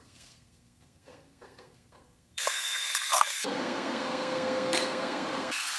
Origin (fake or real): fake